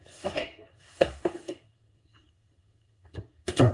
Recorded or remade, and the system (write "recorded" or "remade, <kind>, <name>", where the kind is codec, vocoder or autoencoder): remade, codec, SNAC